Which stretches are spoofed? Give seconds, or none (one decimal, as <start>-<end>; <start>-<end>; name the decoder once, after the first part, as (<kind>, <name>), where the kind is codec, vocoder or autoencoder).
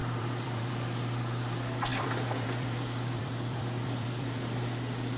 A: 0.0-0.7 (vocoder, BigVGAN v2); 1.9-4.4